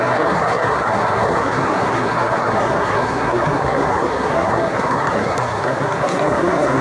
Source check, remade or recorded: remade